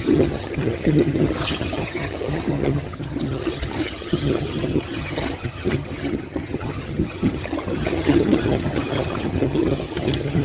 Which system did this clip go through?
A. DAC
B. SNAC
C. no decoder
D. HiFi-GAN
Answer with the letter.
D